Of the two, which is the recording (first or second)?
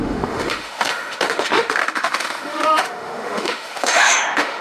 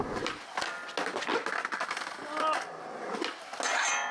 second